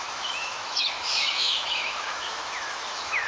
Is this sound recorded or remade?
remade